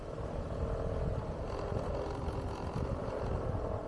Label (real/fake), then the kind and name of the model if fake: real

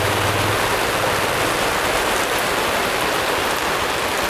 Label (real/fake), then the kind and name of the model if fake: real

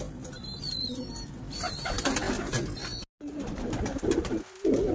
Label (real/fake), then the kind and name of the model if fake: real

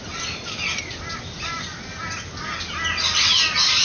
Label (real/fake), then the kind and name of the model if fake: real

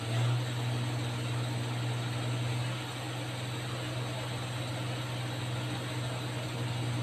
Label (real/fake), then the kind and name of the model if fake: real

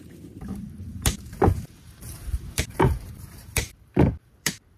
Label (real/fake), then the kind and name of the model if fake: fake, vocoder, BigVGAN v2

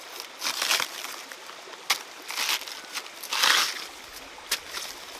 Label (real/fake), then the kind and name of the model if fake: real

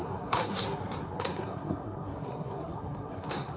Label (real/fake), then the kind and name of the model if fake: fake, codec, SNAC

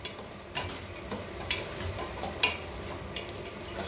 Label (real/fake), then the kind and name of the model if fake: real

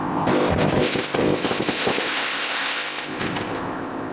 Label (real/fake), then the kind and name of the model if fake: fake, codec, ZipCodec